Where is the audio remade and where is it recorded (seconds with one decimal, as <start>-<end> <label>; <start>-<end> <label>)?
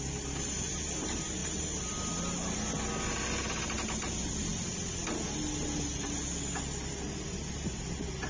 0.0-8.3 recorded